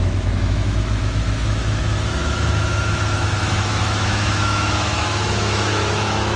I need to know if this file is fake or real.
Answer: fake